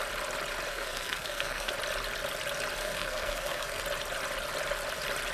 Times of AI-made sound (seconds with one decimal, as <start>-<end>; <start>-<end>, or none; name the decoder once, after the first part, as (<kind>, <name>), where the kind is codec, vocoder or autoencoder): 0.7-1.7 (codec, SNAC); 2.8-3.8